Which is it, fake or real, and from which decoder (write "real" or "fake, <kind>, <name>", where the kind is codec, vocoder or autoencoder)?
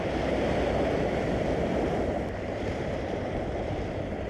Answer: fake, vocoder, BigVGAN v2